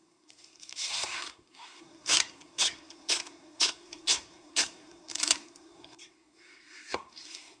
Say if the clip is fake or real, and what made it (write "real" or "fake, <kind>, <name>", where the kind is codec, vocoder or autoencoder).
fake, codec, SNAC